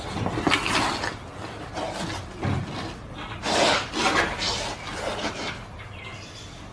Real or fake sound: real